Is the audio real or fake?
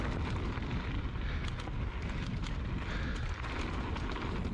real